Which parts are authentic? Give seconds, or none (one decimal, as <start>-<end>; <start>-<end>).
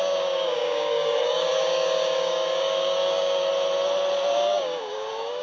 3.5-4.3